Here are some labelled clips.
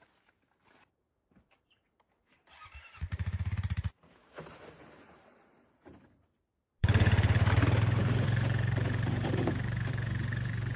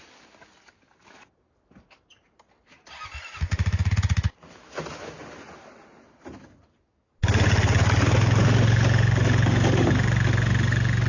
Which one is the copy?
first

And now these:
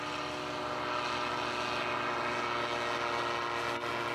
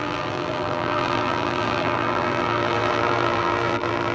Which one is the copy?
second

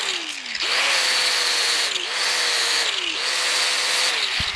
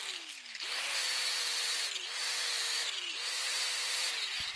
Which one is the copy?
second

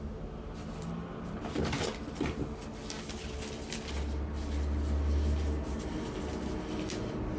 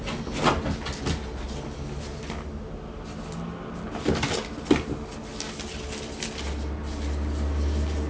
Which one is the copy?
first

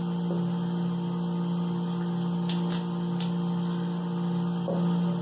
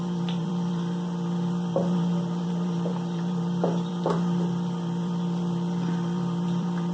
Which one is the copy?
second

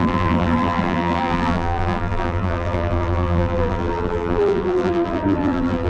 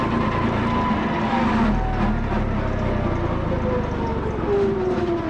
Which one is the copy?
first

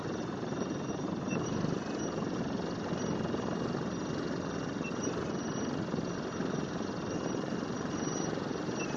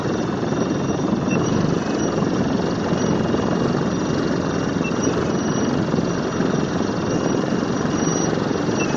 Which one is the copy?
first